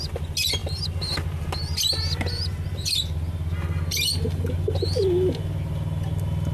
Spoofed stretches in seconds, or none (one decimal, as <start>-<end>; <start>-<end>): none